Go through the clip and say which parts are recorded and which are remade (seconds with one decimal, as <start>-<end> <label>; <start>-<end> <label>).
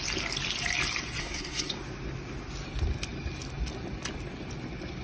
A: 0.0-1.2 recorded; 1.2-1.7 remade; 1.7-5.0 recorded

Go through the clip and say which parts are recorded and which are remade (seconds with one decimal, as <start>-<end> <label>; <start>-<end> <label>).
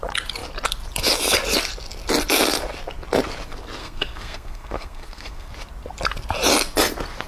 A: 0.0-3.8 recorded; 3.8-5.5 remade; 5.5-7.3 recorded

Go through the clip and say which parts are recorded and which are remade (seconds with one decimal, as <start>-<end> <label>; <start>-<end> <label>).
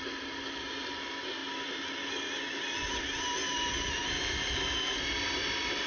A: 0.0-5.9 recorded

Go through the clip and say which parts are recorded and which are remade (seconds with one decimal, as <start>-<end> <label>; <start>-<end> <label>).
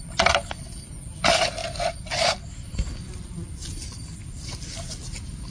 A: 0.0-5.5 recorded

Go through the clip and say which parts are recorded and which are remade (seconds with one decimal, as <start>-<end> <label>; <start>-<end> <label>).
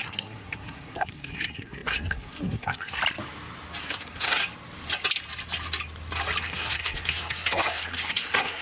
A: 0.0-3.0 remade; 3.0-3.8 recorded; 3.8-4.4 remade; 4.4-6.4 recorded; 6.4-8.6 remade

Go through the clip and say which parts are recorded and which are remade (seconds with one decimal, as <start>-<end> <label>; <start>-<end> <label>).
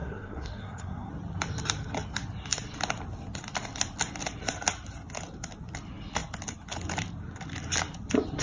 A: 0.0-1.1 remade; 1.1-8.4 recorded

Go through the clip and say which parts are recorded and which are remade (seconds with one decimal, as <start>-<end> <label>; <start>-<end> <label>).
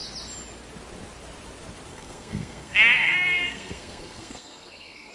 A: 0.0-1.9 recorded; 1.9-5.1 remade